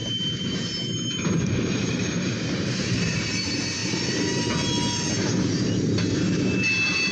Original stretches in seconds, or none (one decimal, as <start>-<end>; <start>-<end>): 3.4-7.1